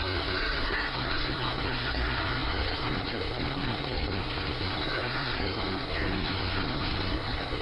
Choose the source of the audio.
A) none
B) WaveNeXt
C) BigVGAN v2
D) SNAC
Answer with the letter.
D